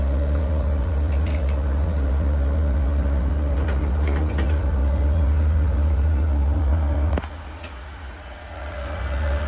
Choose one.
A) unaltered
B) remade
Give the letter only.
B